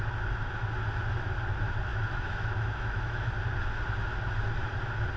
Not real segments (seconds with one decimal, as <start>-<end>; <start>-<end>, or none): 1.9-3.3